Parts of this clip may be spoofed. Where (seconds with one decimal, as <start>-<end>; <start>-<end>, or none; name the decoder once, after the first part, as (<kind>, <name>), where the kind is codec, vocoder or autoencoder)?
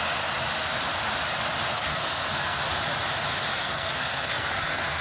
1.7-2.6 (codec, SNAC); 3.5-5.0